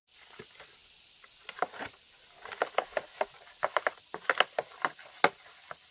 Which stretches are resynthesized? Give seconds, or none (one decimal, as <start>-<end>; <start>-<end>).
none